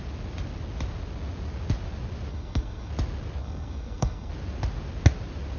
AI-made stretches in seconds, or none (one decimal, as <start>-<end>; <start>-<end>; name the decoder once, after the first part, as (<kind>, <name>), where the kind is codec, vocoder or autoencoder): 2.3-2.9 (codec, SNAC); 3.4-4.3